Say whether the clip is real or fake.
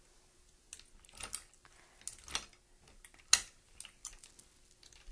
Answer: real